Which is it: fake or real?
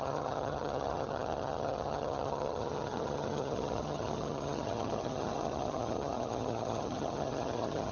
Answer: fake